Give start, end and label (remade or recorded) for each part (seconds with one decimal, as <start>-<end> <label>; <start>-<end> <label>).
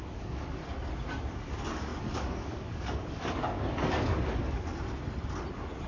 0.0-0.6 remade; 0.6-1.3 recorded; 1.3-4.7 remade; 4.7-5.5 recorded; 5.5-5.9 remade